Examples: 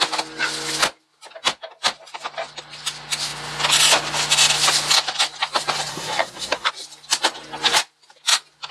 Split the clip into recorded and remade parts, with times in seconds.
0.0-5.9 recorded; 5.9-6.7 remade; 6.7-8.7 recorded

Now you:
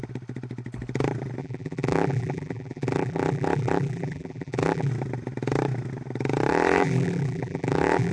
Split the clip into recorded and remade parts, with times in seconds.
0.0-1.4 recorded; 1.4-4.9 remade; 4.9-6.5 recorded; 6.5-8.1 remade

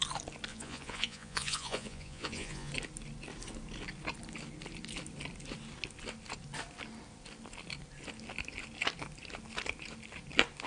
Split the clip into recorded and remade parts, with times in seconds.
0.0-0.5 recorded; 0.5-2.7 remade; 2.7-10.7 recorded

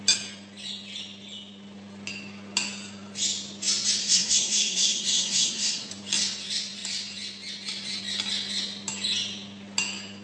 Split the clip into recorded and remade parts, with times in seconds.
0.0-4.0 recorded; 4.0-5.9 remade; 5.9-10.2 recorded

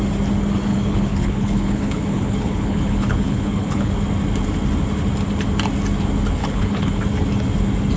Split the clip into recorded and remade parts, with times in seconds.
0.0-0.7 recorded; 0.7-3.9 remade; 3.9-6.4 recorded; 6.4-7.0 remade; 7.0-8.0 recorded